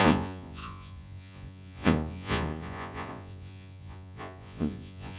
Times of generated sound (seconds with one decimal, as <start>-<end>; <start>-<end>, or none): 0.0-5.2